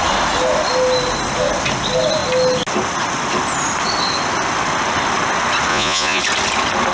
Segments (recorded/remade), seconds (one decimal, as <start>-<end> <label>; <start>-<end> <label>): 0.0-5.7 recorded; 5.7-6.2 remade; 6.2-6.9 recorded